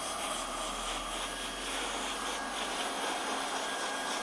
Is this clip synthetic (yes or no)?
no